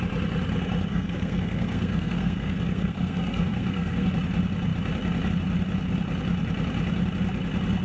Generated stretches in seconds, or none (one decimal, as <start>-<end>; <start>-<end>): 0.9-4.1